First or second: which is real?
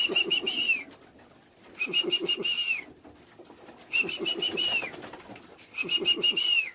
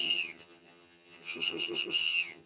first